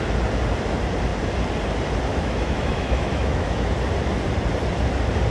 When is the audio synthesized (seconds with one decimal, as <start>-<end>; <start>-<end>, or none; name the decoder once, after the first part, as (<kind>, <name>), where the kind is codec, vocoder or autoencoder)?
2.1-3.7 (autoencoder, DAC-VAE)